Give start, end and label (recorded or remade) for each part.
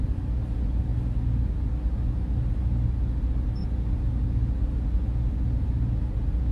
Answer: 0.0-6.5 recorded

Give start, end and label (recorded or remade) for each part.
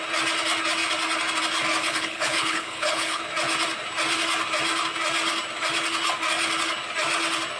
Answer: 0.0-1.8 recorded; 1.8-3.2 remade; 3.2-7.6 recorded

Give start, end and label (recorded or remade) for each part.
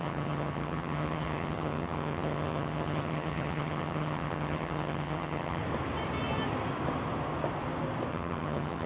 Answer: 0.0-5.6 remade; 5.6-8.1 recorded; 8.1-8.9 remade